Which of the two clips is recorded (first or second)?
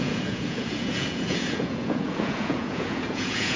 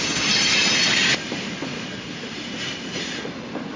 second